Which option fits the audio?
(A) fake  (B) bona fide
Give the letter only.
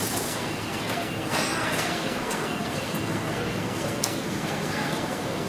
A